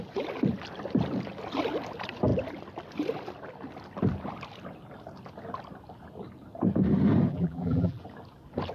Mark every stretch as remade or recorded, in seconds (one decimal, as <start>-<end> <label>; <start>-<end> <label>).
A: 0.0-7.3 recorded; 7.3-8.0 remade; 8.0-8.7 recorded